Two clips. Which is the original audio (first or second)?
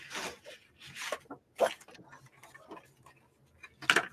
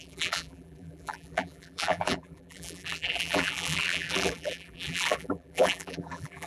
first